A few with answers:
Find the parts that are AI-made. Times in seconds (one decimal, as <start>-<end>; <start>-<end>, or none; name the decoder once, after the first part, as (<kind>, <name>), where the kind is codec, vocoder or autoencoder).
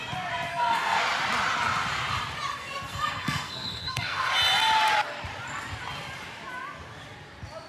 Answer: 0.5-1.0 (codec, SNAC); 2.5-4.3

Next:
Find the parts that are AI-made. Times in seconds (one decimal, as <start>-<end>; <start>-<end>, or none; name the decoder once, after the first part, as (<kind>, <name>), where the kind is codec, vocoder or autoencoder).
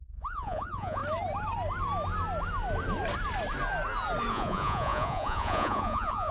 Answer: 0.0-1.0 (vocoder, Vocos); 4.3-6.3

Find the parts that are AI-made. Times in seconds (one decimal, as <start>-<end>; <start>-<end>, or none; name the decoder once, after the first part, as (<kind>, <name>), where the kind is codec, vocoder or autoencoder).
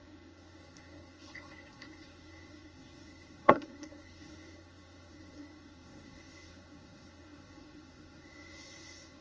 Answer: 0.0-9.2 (codec, SNAC)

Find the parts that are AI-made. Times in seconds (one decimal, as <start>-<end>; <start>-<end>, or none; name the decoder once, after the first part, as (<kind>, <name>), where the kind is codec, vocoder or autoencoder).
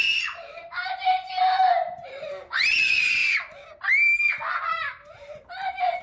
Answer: 0.0-3.2 (vocoder, BigVGAN v2); 4.6-6.0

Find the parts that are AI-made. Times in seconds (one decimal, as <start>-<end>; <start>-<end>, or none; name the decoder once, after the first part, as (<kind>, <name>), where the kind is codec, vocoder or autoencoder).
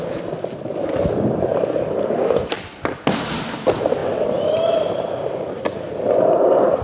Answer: none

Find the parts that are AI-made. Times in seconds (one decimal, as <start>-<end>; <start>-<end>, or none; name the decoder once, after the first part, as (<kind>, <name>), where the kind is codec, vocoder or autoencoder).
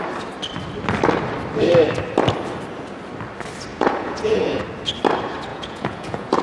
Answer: 3.7-4.6 (vocoder, Vocos); 5.5-6.4